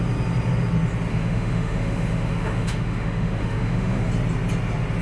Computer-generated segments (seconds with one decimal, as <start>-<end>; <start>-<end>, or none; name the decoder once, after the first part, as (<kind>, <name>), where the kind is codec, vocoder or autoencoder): 1.1-4.1 (autoencoder, DAC-VAE)